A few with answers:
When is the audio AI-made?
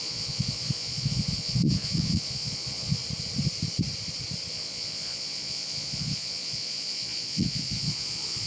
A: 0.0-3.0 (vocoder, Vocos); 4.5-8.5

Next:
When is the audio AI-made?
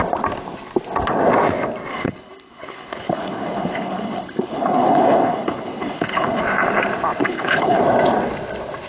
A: 1.9-6.4 (codec, HILCodec); 7.2-7.8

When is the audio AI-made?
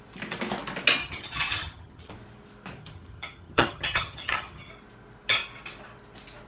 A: 1.0-2.1 (vocoder, HiFi-GAN); 2.8-4.7